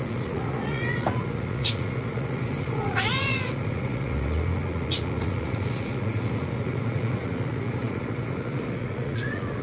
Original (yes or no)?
no